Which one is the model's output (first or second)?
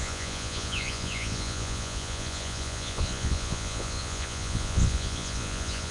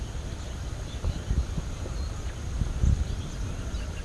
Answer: first